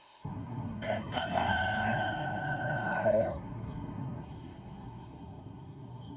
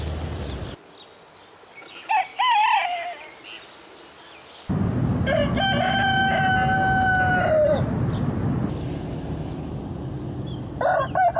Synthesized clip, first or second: first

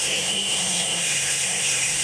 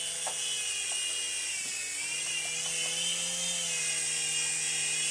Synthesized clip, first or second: first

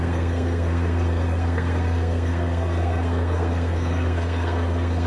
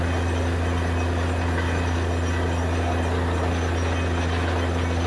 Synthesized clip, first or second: first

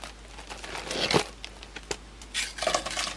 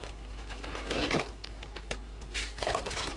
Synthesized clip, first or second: second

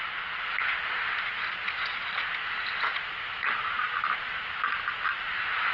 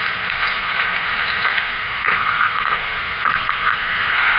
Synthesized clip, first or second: second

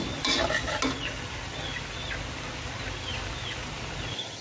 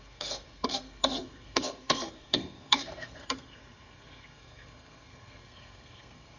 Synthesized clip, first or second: second